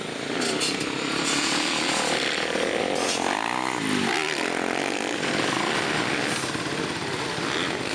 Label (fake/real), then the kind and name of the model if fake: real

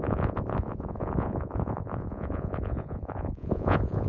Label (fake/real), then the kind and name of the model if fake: fake, vocoder, Vocos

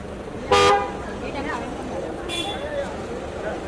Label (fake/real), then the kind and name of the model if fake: real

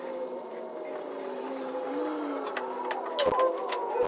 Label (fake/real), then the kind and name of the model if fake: real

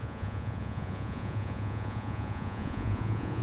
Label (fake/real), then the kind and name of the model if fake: fake, vocoder, Vocos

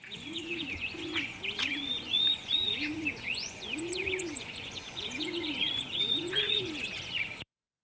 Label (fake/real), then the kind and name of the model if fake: fake, vocoder, Vocos